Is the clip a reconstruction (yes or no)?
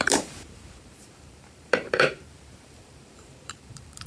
yes